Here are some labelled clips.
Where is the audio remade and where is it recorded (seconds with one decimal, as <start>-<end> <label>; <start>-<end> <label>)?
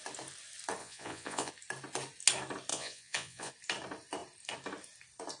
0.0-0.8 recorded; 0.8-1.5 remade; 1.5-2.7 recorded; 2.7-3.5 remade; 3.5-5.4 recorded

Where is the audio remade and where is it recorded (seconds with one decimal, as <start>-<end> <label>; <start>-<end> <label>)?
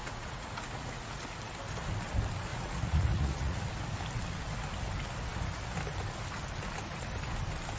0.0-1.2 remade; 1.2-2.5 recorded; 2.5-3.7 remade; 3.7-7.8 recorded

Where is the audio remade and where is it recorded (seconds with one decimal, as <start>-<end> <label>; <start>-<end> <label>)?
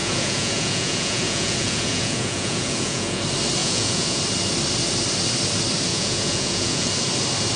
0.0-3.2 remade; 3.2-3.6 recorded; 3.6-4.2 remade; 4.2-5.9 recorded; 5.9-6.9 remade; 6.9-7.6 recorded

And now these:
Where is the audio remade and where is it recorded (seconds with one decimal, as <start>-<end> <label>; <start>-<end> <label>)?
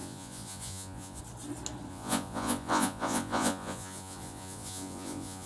0.0-1.2 remade; 1.2-1.9 recorded; 1.9-5.5 remade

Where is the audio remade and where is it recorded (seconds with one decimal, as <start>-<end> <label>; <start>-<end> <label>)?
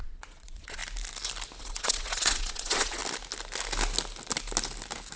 0.0-0.8 remade; 0.8-1.6 recorded; 1.6-3.0 remade; 3.0-5.2 recorded